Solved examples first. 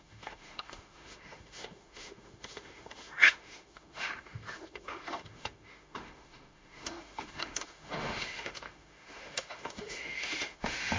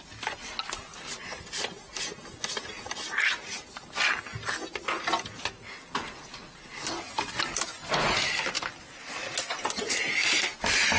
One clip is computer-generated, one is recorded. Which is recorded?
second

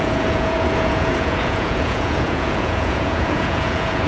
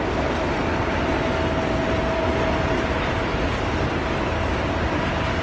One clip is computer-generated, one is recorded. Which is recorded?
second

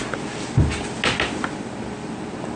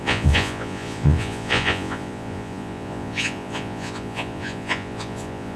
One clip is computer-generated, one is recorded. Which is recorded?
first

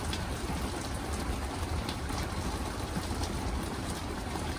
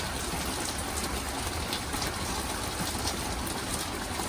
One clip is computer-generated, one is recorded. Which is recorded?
second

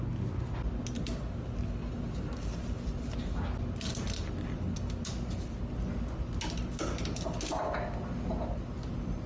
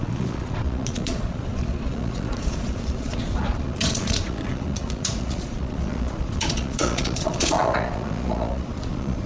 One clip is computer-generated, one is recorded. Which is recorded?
first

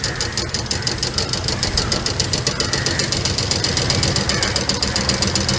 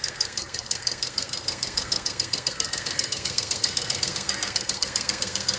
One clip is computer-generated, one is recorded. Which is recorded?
first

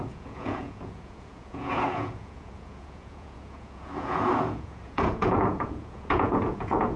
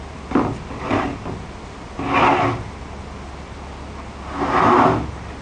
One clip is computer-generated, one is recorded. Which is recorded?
second